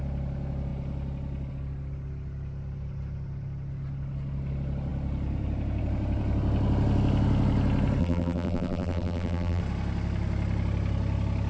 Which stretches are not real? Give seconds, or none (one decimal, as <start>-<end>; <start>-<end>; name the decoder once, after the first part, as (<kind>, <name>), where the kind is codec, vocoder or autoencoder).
8.0-9.6 (vocoder, BigVGAN v2)